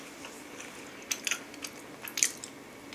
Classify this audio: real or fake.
real